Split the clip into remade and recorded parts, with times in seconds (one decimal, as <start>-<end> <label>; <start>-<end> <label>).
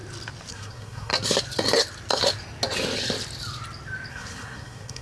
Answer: 0.0-0.5 recorded; 0.5-1.1 remade; 1.1-4.1 recorded; 4.1-5.0 remade